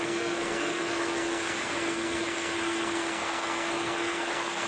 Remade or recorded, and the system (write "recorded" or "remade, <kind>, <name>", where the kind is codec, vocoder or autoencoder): remade, codec, SNAC